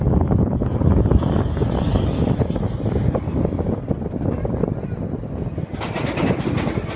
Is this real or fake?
real